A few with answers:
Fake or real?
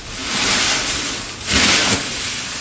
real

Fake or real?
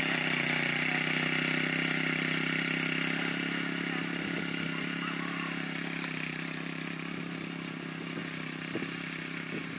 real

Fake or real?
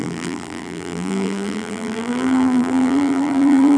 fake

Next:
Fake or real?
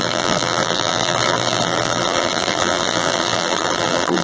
fake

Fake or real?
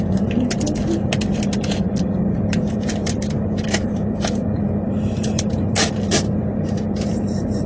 fake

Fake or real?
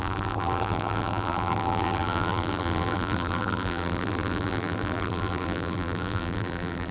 fake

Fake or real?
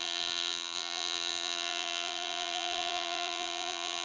fake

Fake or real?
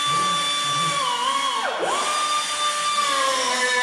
real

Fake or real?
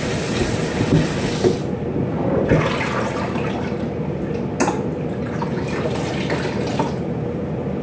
real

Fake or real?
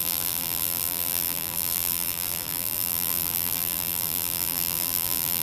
fake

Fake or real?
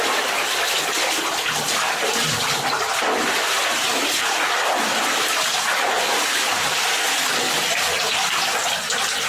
real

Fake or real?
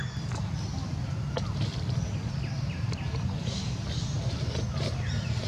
real